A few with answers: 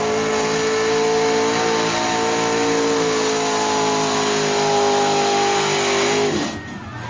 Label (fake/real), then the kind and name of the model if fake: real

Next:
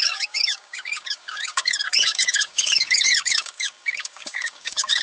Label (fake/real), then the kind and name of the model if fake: fake, codec, DAC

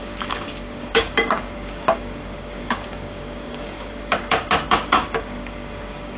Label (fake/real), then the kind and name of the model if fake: fake, codec, DAC